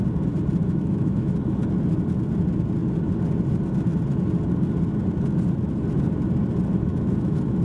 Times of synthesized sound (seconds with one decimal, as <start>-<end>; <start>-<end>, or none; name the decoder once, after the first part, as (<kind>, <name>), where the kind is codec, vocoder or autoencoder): 0.6-1.3 (autoencoder, DAC-VAE); 6.9-7.6